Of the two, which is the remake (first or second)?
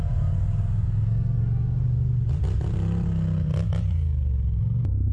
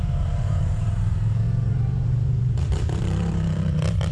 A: second